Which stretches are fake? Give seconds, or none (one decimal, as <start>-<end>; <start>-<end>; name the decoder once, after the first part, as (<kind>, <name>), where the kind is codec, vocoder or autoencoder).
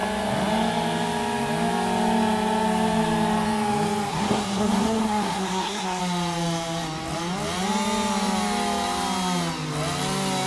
4.1-6.0 (codec, SNAC)